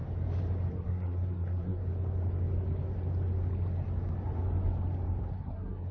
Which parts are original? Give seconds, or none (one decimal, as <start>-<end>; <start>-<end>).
0.0-0.7; 1.8-5.3